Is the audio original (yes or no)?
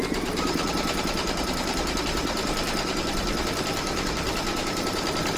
no